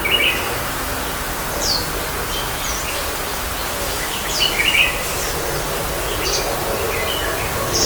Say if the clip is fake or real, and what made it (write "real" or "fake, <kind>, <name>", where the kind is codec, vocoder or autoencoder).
real